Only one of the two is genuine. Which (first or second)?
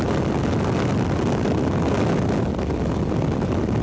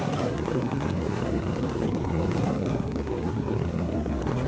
first